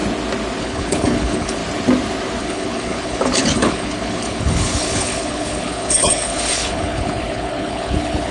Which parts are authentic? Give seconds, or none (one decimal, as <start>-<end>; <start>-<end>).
0.0-0.6; 1.6-2.4